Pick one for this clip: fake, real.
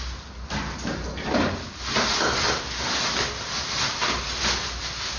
real